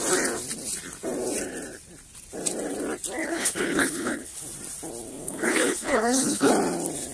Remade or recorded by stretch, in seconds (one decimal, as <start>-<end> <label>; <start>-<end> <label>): 0.0-3.2 recorded; 3.2-4.4 remade; 4.4-5.1 recorded; 5.1-6.5 remade; 6.5-7.1 recorded

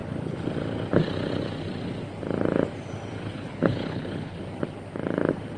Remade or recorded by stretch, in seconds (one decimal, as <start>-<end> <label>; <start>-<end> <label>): 0.0-3.3 recorded; 3.3-4.4 remade; 4.4-5.6 recorded

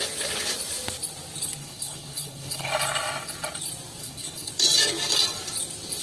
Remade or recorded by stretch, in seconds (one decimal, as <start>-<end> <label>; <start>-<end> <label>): 0.0-1.6 recorded; 1.6-2.7 remade; 2.7-4.0 recorded; 4.0-4.5 remade; 4.5-6.0 recorded